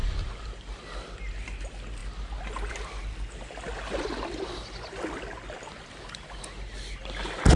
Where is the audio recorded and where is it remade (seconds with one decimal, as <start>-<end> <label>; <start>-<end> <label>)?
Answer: 0.0-0.6 remade; 0.6-7.6 recorded